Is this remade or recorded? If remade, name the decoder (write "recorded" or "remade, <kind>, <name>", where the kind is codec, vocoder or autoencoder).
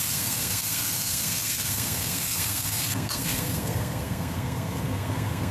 remade, codec, SNAC